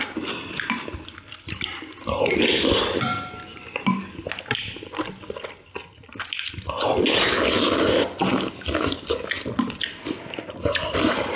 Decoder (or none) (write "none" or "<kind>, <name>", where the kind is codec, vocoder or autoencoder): none